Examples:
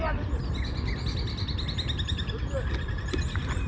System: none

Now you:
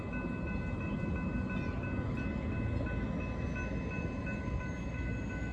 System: none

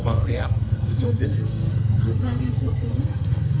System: codec, SNAC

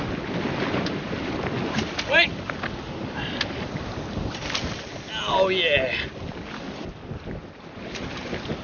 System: none